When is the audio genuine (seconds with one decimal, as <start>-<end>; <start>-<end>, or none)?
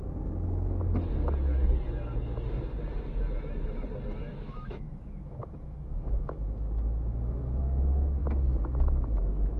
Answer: 0.0-4.3; 7.6-9.6